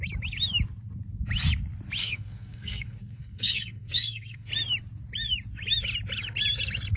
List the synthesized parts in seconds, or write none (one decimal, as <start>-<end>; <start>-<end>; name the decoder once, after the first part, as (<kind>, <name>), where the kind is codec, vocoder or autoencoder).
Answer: 2.0-4.5 (codec, SNAC)